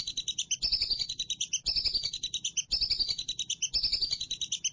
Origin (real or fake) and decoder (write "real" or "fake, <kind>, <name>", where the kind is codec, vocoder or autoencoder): real